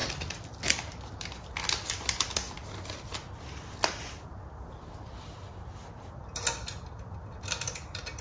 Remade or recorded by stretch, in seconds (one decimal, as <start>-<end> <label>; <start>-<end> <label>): 0.0-8.2 recorded